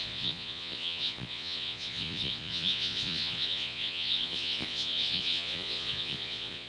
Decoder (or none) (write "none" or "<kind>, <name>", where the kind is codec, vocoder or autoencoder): vocoder, Vocos